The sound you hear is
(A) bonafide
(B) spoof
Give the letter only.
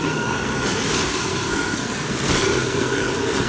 B